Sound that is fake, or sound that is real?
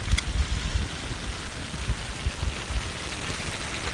real